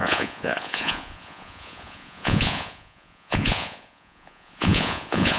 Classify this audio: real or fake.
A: fake